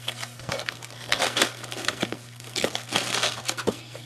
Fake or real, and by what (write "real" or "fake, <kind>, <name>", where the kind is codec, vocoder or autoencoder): fake, codec, SNAC